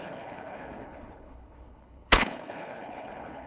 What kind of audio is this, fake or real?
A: fake